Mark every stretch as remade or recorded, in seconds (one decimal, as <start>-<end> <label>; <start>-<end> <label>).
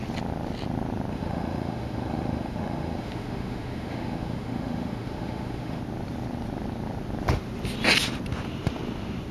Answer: 0.0-1.1 recorded; 1.1-5.8 remade; 5.8-9.3 recorded